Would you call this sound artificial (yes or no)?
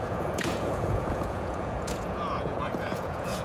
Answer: yes